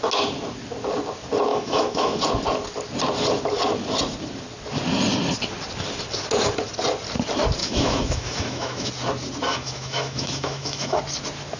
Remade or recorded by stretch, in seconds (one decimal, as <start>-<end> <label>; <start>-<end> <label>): 0.0-1.5 recorded; 1.5-2.2 remade; 2.2-7.6 recorded; 7.6-8.9 remade; 8.9-9.5 recorded; 9.5-11.0 remade; 11.0-11.6 recorded